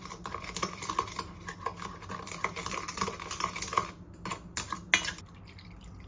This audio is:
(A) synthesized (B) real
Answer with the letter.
B